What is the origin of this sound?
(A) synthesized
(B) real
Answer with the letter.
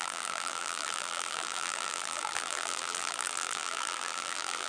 A